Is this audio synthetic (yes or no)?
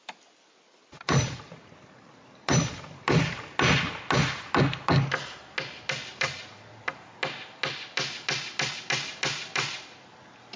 no